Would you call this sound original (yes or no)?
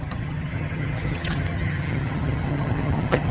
no